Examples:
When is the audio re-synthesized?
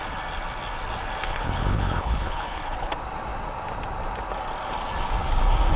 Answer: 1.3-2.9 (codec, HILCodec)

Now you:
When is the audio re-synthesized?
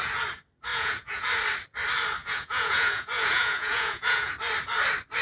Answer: 0.7-1.3 (vocoder, Vocos); 2.2-4.3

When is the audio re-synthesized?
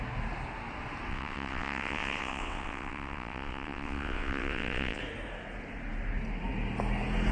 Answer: 1.1-5.0 (vocoder, WaveNeXt)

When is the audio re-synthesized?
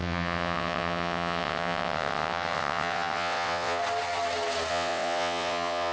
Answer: 0.0-3.8 (vocoder, WaveNeXt); 4.7-5.9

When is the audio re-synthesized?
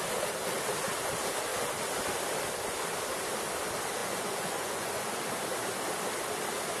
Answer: 4.0-5.2 (vocoder, Vocos)